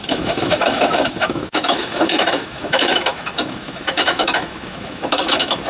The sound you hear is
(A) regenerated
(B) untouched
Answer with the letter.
A